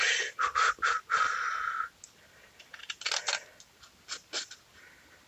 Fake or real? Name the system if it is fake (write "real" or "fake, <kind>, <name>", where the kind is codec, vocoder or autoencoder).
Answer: real